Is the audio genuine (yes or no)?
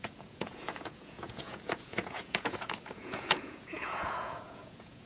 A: no